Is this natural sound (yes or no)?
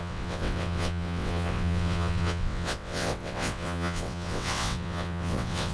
no